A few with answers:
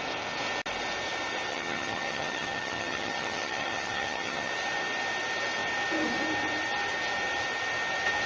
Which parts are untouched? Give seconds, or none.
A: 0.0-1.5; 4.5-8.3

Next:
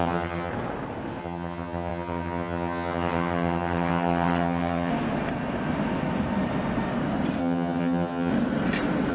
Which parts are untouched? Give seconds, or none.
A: 0.5-1.2; 4.9-7.4; 8.3-9.1

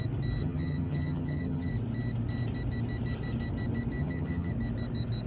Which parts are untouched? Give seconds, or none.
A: 0.0-0.4; 1.7-4.0; 4.5-5.3

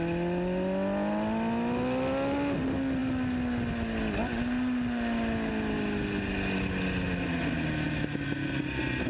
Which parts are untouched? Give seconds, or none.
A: 0.0-9.1

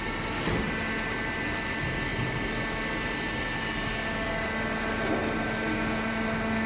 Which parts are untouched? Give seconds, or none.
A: 0.0-6.7